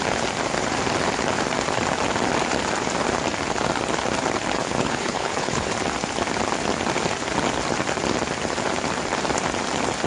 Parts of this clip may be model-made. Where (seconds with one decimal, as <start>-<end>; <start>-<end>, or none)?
4.6-5.7